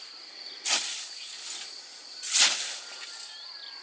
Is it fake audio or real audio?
real